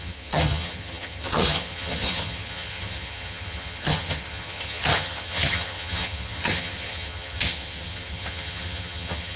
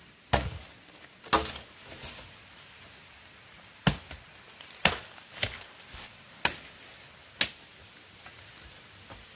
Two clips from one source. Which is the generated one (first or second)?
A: first